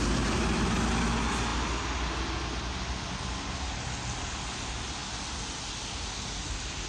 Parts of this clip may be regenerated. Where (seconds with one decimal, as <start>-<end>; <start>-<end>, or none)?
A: none